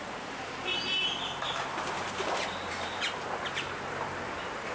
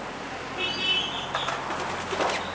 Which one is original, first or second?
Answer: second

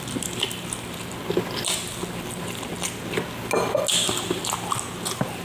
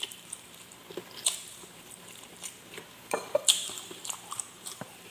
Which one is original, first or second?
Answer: first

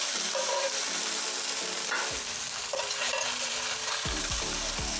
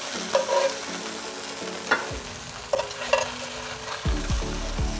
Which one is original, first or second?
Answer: second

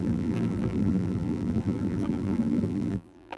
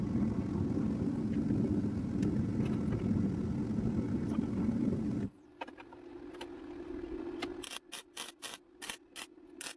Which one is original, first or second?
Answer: second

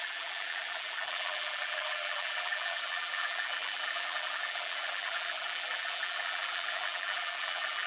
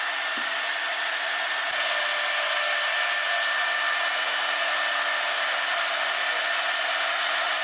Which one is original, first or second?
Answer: second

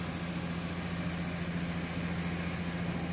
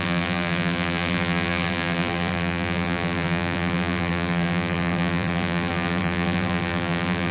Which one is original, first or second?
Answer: first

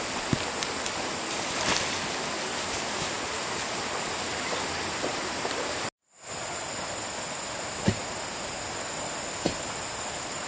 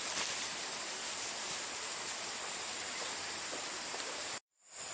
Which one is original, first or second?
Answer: first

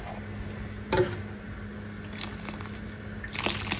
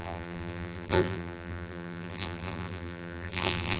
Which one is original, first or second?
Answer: first